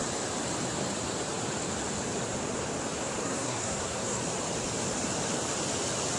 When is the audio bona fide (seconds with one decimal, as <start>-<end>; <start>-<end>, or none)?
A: 0.0-3.2; 4.2-6.2